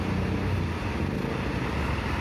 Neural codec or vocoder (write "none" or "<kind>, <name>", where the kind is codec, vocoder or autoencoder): none